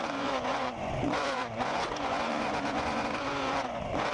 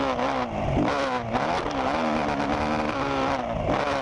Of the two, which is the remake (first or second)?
first